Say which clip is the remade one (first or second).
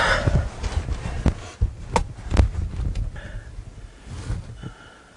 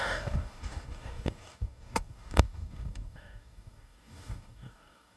second